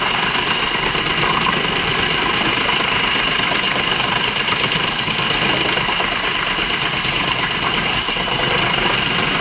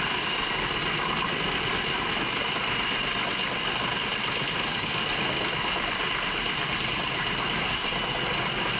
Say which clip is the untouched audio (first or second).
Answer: second